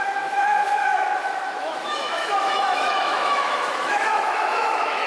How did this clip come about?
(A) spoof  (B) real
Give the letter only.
A